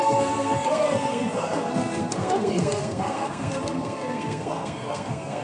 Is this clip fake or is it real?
fake